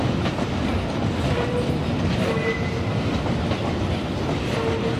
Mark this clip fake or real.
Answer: real